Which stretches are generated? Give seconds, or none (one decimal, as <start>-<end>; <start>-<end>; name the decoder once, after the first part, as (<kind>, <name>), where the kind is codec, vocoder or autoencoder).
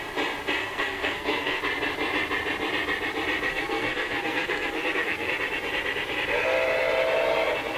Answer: 0.6-1.6 (codec, SNAC); 3.5-5.3